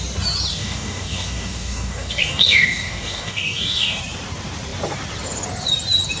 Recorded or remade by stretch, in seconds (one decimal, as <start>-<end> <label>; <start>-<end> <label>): 0.0-0.5 recorded; 0.5-4.0 remade; 4.0-6.2 recorded